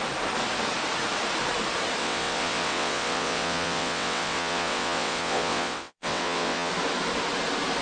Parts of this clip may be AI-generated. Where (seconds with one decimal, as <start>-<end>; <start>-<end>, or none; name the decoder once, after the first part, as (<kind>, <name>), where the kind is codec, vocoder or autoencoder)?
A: 2.0-6.7 (vocoder, WaveNeXt)